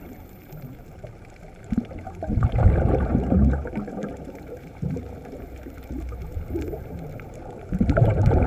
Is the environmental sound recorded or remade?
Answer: remade